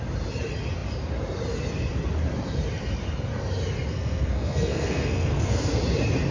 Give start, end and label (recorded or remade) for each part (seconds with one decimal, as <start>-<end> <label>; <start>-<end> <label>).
0.0-3.9 recorded; 3.9-5.8 remade; 5.8-6.3 recorded